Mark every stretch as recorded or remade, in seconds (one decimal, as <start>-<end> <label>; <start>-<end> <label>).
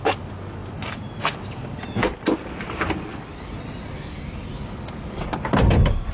0.0-6.1 recorded